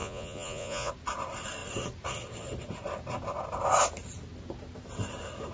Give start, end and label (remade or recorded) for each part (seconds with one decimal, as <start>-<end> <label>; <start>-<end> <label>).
0.0-0.9 remade; 0.9-5.5 recorded